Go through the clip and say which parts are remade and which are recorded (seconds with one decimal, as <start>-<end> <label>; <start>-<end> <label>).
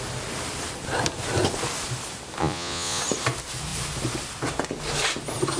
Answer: 0.0-2.4 recorded; 2.4-3.0 remade; 3.0-5.6 recorded